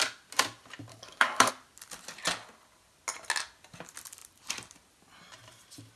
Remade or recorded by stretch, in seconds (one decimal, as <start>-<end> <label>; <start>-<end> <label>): 0.0-0.9 recorded; 0.9-1.5 remade; 1.5-6.0 recorded